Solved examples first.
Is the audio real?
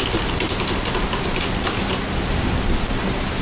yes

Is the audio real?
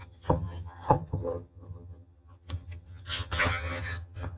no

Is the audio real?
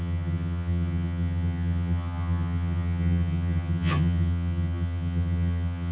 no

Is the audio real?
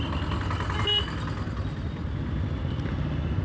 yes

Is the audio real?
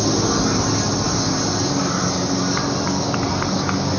yes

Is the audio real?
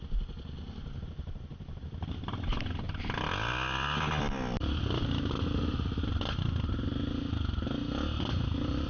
yes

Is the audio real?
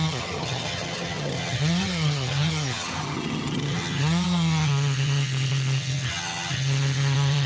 no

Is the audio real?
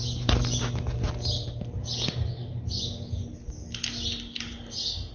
yes